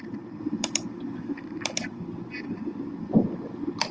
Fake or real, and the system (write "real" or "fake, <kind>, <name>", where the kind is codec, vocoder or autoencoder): fake, vocoder, BigVGAN v2